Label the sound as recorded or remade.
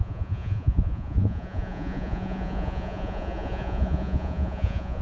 remade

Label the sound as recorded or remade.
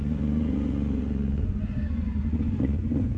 remade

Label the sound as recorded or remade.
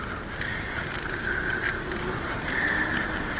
recorded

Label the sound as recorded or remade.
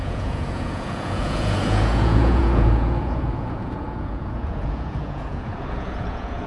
remade